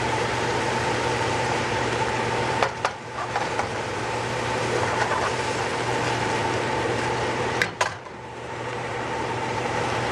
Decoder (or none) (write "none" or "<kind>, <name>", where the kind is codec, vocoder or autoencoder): vocoder, BigVGAN v2